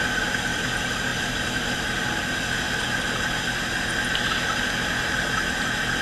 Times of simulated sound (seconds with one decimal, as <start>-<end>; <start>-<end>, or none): none

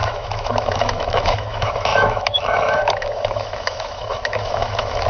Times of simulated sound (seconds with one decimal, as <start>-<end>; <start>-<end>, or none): 0.0-5.1

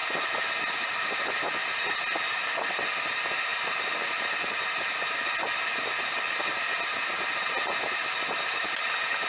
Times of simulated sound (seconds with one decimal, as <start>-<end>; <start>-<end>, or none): none

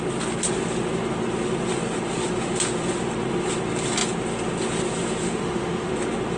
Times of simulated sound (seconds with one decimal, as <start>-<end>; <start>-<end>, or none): 5.2-5.9

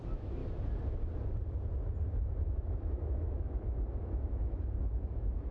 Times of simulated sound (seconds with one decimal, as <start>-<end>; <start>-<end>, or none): 0.0-0.4; 2.4-5.5

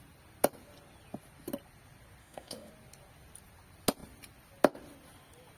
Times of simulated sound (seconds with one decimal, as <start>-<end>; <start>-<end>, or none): 2.2-2.7